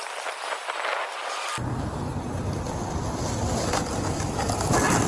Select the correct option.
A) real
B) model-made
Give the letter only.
A